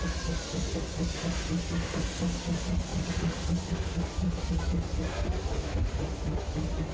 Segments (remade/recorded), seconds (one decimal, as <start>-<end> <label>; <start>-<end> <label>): 0.0-6.9 recorded